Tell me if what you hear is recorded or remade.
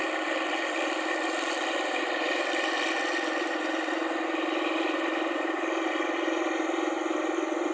remade